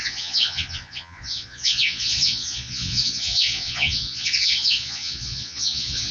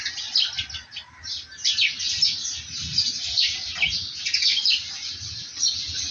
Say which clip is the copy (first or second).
first